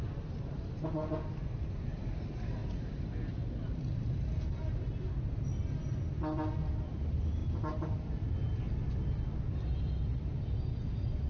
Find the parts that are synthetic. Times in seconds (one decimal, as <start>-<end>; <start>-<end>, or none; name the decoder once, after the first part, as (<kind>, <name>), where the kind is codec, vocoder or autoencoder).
none

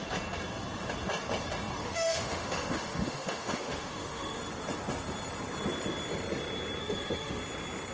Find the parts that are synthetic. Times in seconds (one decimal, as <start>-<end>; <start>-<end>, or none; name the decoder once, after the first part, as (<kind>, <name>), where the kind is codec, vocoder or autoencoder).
1.8-4.4 (autoencoder, DAC-VAE); 6.8-7.4

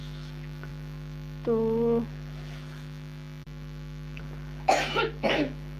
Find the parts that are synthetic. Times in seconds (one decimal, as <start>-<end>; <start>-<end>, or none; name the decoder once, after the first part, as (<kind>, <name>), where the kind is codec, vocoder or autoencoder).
0.0-5.8 (autoencoder, DAC-VAE)

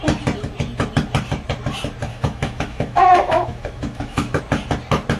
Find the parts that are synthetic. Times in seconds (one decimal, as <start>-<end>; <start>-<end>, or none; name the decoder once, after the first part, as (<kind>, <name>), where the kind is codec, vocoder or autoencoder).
2.1-4.4 (autoencoder, DAC-VAE)